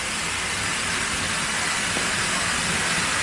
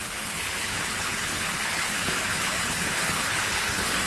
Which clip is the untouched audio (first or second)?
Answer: first